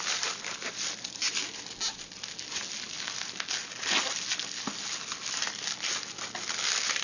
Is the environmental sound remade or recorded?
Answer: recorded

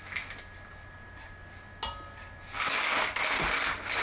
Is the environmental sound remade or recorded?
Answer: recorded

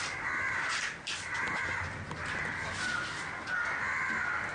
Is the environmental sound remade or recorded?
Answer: recorded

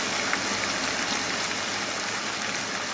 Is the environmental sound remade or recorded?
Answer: recorded